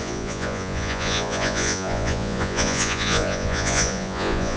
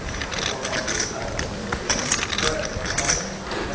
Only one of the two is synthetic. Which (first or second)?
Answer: first